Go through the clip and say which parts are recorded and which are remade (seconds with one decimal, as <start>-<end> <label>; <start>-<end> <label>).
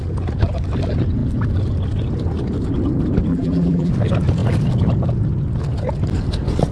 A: 0.0-3.3 recorded; 3.3-3.9 remade; 3.9-6.7 recorded